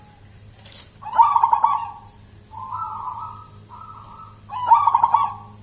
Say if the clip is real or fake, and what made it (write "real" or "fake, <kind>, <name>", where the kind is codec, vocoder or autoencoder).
real